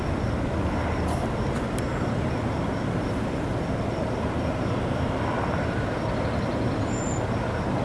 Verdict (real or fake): real